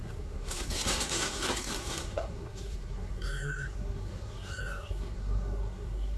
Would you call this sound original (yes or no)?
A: no